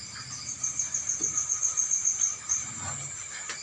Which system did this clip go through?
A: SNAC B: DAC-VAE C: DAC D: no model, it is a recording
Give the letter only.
D